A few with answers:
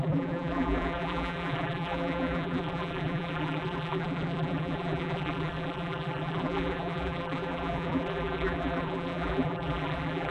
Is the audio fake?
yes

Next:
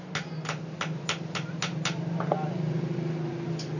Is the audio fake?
no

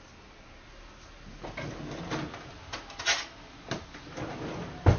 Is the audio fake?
no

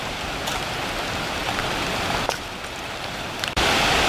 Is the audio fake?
yes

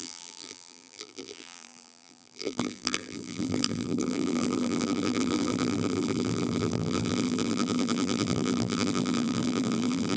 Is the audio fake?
yes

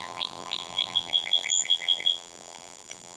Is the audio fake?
yes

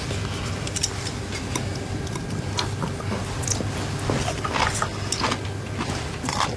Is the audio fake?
no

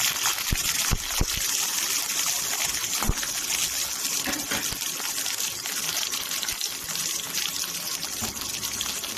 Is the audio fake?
no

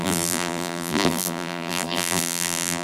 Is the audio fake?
yes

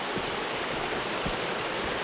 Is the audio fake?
no